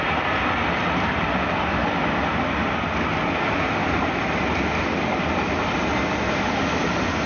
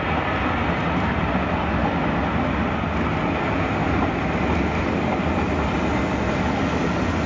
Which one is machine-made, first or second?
first